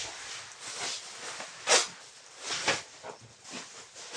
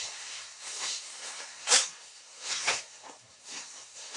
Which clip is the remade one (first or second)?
second